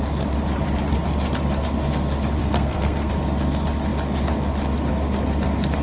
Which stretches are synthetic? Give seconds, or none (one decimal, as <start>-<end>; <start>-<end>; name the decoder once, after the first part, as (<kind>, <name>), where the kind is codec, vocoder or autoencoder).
2.4-3.1 (codec, SNAC)